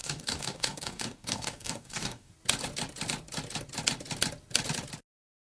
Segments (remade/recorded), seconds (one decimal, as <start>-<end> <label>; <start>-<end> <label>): 0.0-2.3 remade; 2.3-5.6 recorded